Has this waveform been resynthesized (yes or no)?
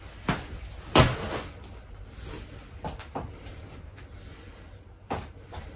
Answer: no